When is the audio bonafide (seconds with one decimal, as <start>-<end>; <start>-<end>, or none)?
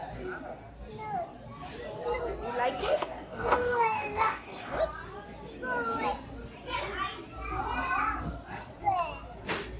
0.0-2.8; 4.8-9.8